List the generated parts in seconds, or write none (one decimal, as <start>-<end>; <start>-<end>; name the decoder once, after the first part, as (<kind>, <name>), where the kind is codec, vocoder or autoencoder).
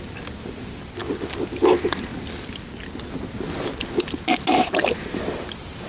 none